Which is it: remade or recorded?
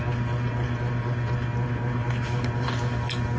recorded